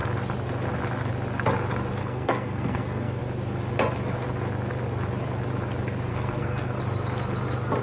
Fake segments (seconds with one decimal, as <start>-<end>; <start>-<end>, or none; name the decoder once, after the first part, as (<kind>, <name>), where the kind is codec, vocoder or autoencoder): 2.0-3.2 (codec, SNAC); 6.1-6.8